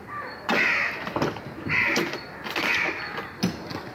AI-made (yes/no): yes